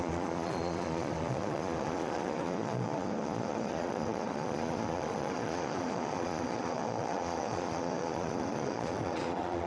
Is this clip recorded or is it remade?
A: remade